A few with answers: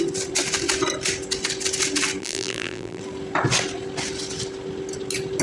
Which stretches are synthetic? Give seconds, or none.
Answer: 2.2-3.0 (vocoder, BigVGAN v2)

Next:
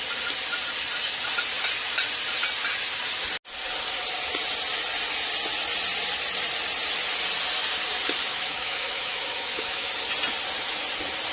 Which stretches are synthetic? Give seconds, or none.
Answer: 8.3-9.9 (autoencoder, DAC-VAE)

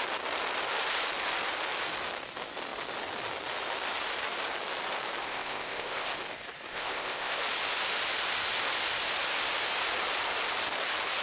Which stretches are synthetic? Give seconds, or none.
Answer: 5.2-6.1 (codec, ZipCodec); 6.7-7.4